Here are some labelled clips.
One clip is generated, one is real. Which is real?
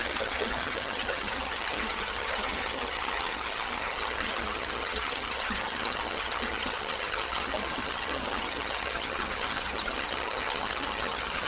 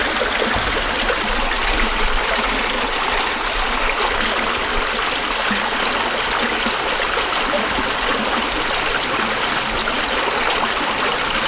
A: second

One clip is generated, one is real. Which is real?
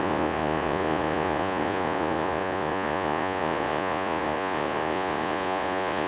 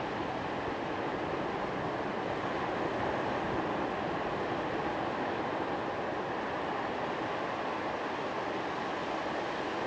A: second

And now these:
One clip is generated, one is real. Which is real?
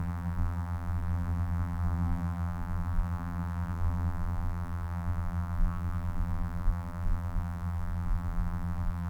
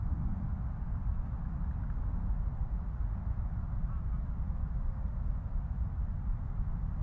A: second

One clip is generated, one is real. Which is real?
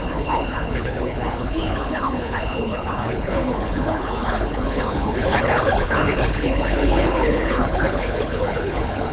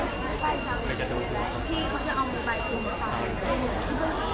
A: second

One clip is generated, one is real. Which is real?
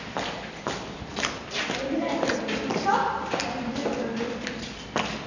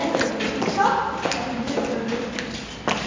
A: first